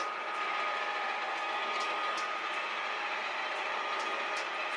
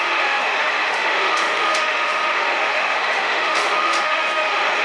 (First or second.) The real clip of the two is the first